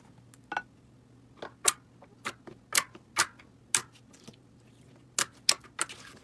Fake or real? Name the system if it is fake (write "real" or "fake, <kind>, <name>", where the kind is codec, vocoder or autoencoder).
real